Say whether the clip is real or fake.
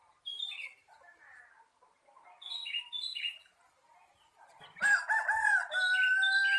real